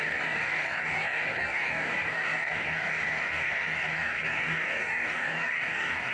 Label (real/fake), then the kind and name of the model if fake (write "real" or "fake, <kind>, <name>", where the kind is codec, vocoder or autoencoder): fake, codec, DAC